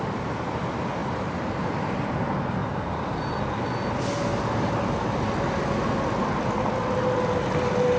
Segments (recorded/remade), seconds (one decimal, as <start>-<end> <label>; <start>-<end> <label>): 0.0-1.0 recorded; 1.0-1.7 remade; 1.7-2.6 recorded; 2.6-3.2 remade; 3.2-8.0 recorded